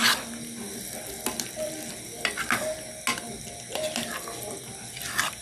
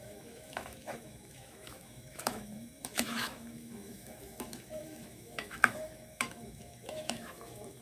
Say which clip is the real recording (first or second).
first